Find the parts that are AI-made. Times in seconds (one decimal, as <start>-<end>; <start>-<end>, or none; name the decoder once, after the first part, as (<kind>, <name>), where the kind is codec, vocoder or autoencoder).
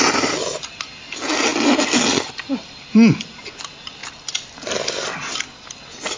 1.5-2.9 (vocoder, BigVGAN v2)